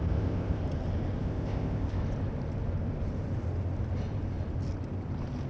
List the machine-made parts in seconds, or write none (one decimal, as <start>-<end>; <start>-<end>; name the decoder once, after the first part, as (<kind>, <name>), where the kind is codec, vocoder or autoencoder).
0.0-0.6 (codec, ZipCodec); 1.2-2.0